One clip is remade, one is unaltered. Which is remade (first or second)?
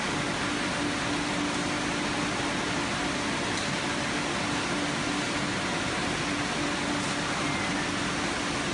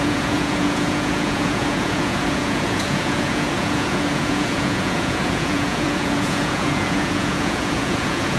second